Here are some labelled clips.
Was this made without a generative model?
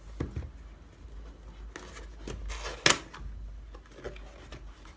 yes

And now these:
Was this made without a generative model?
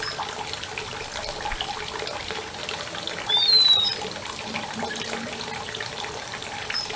yes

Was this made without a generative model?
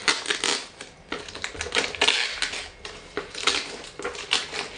yes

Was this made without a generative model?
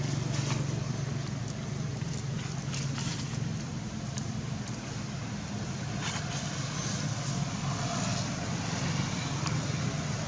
yes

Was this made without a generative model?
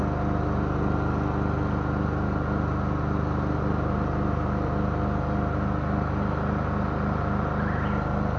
yes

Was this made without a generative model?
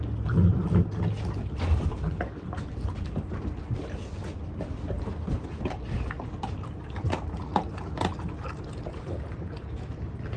yes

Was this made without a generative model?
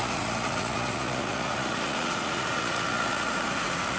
no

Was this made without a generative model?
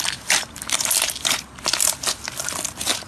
yes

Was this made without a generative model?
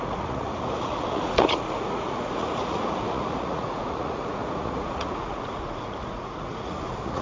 no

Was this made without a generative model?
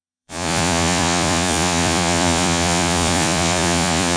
no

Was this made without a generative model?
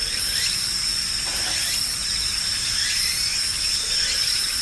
yes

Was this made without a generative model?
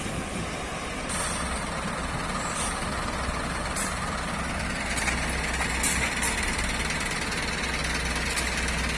yes